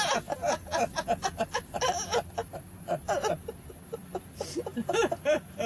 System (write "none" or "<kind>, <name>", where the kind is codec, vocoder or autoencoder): none